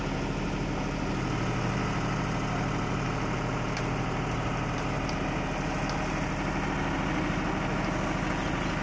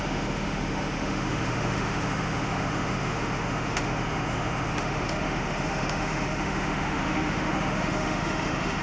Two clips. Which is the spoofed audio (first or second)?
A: second